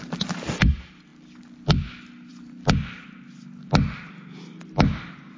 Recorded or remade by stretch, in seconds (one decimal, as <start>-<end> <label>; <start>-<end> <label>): 0.0-5.4 recorded